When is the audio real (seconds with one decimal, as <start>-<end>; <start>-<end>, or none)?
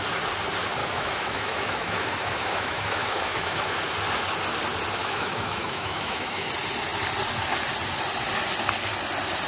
0.0-0.8; 3.8-5.0; 6.5-9.5